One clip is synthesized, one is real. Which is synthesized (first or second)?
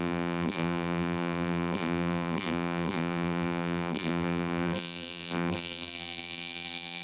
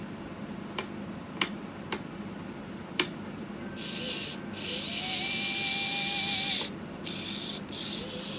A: first